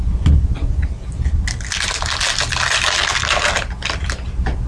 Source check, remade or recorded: recorded